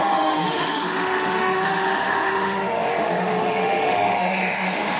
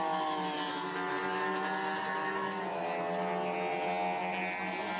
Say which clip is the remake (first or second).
first